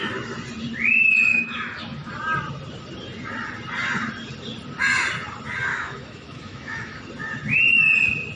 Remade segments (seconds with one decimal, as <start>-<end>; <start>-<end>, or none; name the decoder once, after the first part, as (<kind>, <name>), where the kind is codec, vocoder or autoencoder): 1.3-2.1 (autoencoder, DAC-VAE); 5.7-7.0